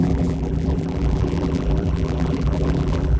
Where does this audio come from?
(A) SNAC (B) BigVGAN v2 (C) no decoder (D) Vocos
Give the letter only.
B